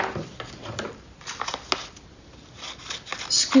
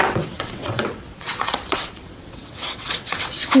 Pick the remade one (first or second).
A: second